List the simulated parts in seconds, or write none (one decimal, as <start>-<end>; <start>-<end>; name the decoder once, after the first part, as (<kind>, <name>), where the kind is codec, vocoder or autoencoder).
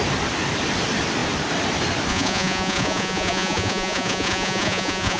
2.1-5.2 (vocoder, Vocos)